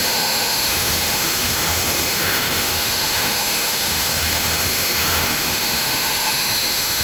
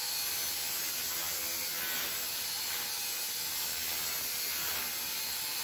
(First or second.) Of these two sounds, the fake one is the first